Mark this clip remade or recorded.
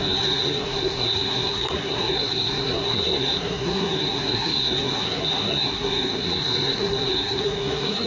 remade